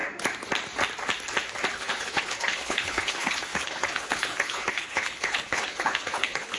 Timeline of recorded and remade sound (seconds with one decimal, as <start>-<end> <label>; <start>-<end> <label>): 0.0-1.7 recorded; 1.7-6.6 remade